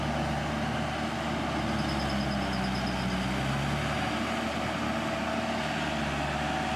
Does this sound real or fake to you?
real